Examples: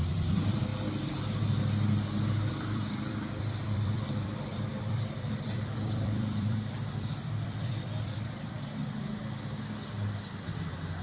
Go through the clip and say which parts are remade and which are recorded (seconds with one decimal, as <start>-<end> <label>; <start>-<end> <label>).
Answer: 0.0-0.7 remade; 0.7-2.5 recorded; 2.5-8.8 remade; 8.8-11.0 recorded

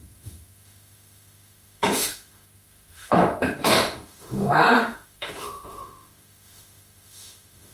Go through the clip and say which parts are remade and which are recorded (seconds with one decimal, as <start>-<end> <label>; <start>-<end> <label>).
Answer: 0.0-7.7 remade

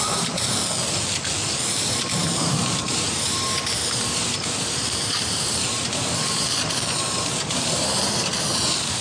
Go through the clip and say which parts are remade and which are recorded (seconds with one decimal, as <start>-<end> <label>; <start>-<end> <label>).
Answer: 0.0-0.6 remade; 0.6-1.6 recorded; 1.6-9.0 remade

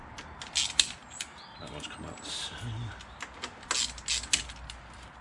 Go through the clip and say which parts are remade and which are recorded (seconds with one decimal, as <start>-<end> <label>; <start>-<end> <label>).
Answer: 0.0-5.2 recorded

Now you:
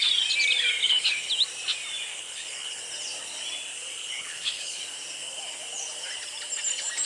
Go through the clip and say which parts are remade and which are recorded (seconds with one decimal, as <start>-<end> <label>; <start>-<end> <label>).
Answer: 0.0-0.8 recorded; 0.8-1.3 remade; 1.3-2.1 recorded; 2.1-2.8 remade; 2.8-4.0 recorded; 4.0-4.8 remade; 4.8-7.1 recorded

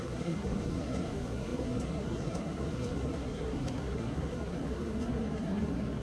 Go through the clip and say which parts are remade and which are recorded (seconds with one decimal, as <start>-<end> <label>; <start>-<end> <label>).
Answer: 0.0-6.0 remade

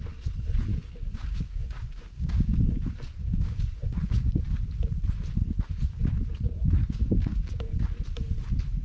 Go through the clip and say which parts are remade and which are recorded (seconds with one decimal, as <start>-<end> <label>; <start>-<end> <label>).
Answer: 0.0-0.7 recorded; 0.7-2.6 remade; 2.6-3.2 recorded; 3.2-4.4 remade; 4.4-6.8 recorded; 6.8-7.7 remade; 7.7-8.8 recorded

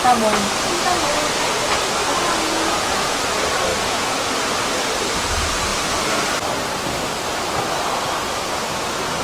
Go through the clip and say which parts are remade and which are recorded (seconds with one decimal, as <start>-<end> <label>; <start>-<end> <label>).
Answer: 0.0-2.5 recorded; 2.5-3.2 remade; 3.2-3.7 recorded; 3.7-4.3 remade; 4.3-9.2 recorded